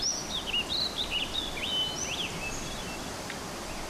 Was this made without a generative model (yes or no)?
yes